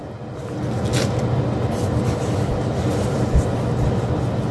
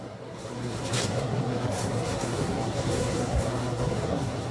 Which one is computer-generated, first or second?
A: second